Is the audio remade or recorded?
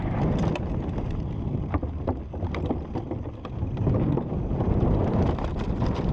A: recorded